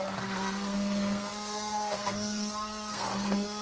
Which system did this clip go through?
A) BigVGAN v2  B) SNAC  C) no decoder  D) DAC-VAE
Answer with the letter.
B